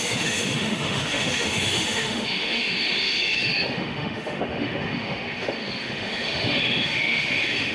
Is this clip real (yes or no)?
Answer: no